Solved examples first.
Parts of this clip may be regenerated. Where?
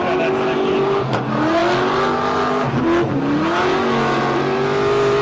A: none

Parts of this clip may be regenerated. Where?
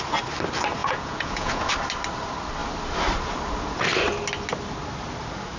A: 0.8-1.7 (vocoder, Vocos)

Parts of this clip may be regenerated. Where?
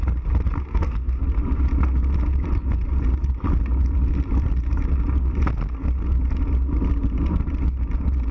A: 0.7-1.2 (codec, SNAC)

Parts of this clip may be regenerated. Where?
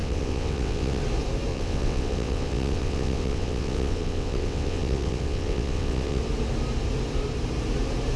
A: 0.0-1.0 (vocoder, WaveNeXt); 1.5-6.2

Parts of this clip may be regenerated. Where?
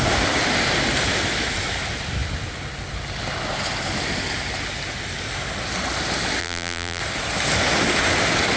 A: 6.4-7.0 (vocoder, BigVGAN v2)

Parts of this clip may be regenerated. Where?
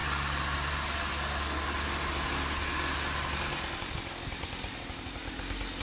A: none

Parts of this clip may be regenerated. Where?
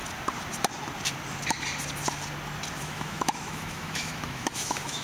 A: 2.8-5.0 (autoencoder, DAC-VAE)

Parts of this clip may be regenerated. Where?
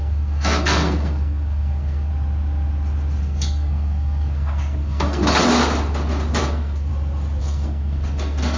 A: 0.0-2.1 (codec, SNAC); 3.2-5.2; 6.4-6.9; 7.4-8.6